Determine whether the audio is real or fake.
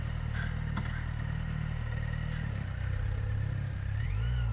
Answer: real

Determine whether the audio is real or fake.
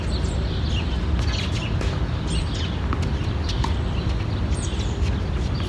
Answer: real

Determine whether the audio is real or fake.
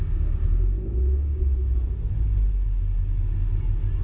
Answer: real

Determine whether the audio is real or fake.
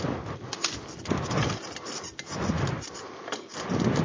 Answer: real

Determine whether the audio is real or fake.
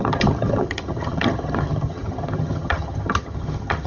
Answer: fake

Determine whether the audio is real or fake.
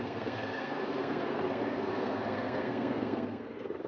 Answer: fake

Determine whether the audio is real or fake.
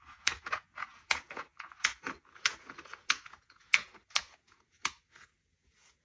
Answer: fake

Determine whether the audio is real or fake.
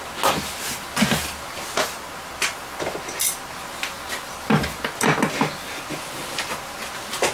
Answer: real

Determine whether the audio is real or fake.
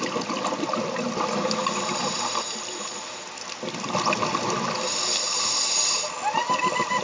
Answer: real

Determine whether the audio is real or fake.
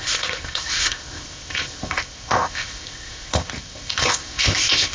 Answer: fake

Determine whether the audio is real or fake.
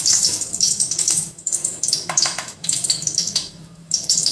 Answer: fake